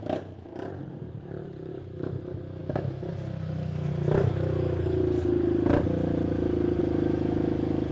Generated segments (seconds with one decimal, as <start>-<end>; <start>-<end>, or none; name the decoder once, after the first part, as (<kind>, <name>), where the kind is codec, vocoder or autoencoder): 0.0-0.5 (autoencoder, DAC-VAE); 1.7-5.0; 6.8-7.9